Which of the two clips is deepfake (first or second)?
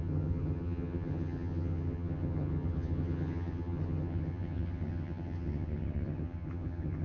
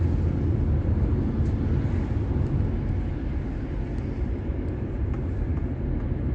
first